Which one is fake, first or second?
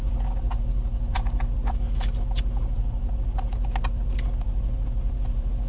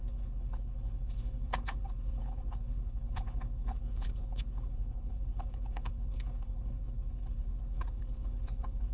second